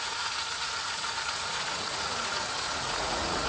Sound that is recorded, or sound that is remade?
remade